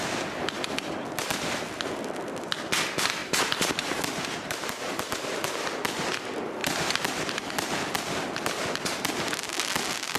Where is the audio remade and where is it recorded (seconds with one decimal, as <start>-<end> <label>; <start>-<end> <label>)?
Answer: 0.0-3.2 recorded; 3.2-4.0 remade; 4.0-4.4 recorded; 4.4-5.4 remade; 5.4-6.6 recorded; 6.6-7.5 remade; 7.5-10.2 recorded